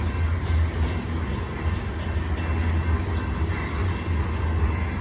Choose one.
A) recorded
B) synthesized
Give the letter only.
A